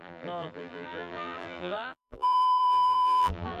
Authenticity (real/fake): fake